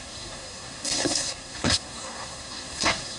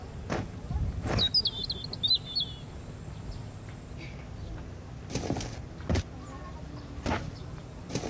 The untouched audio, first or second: second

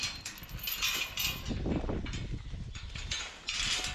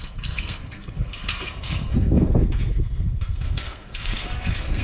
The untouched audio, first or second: first